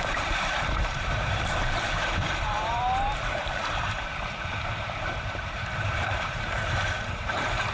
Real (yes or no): no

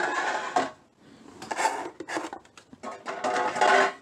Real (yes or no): yes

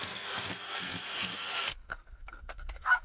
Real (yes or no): no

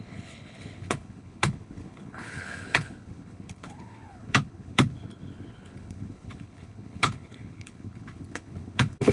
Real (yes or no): no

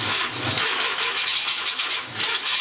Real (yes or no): no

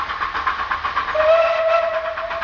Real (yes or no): yes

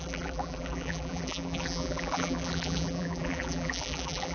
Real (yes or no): no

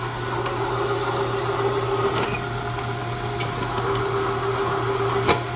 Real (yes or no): yes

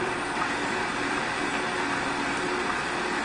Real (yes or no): yes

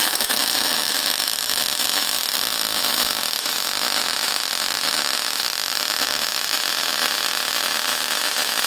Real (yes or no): no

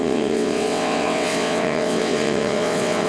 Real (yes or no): no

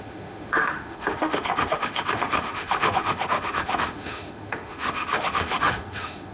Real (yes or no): no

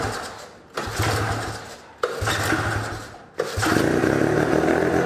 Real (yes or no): yes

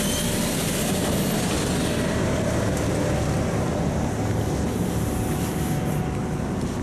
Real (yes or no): yes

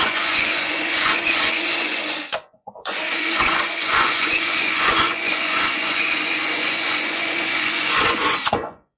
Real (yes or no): no